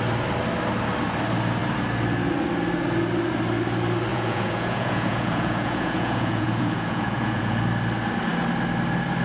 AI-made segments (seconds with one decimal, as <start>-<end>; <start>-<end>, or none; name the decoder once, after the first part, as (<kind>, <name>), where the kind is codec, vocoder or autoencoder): 4.1-7.6 (vocoder, Vocos)